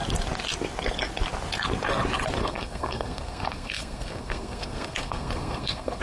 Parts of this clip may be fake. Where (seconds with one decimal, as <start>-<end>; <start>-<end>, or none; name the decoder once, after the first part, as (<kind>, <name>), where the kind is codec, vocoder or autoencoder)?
2.4-6.0 (codec, SNAC)